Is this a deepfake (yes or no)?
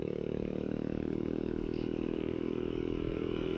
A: yes